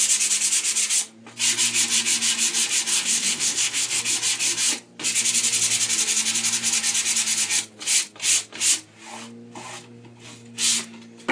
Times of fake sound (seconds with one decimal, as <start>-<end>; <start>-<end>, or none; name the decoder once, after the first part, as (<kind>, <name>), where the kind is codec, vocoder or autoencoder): 2.9-4.0 (codec, SNAC)